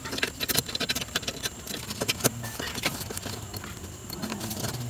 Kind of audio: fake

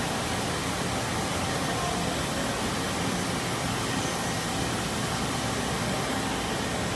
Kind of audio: real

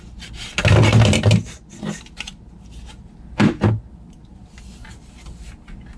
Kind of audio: real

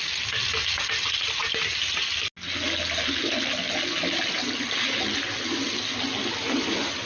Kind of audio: real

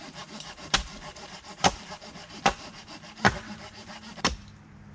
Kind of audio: fake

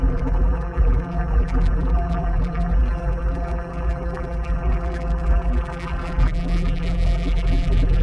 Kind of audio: fake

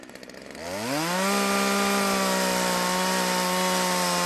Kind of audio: real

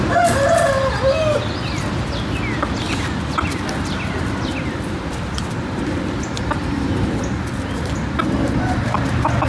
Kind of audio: real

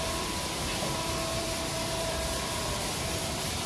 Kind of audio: fake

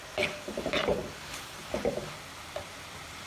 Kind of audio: real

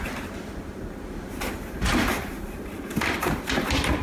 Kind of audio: fake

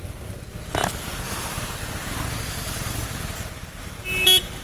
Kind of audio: real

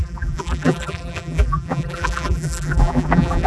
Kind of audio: fake